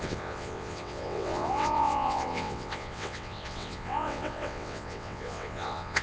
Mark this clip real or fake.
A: fake